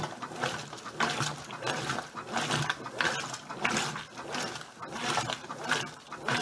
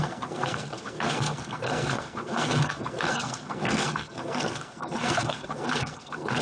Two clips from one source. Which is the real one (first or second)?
first